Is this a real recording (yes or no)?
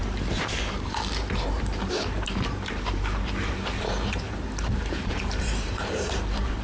no